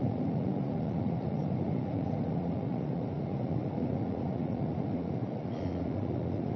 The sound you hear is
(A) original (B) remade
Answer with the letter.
B